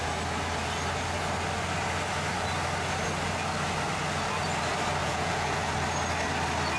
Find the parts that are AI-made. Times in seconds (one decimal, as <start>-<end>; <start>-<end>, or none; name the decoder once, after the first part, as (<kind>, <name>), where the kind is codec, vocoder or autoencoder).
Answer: 5.0-5.7 (vocoder, Vocos)